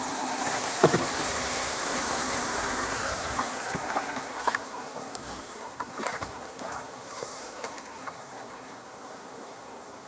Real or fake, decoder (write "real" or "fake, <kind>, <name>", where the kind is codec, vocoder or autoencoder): fake, codec, SNAC